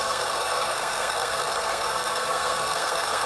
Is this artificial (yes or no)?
yes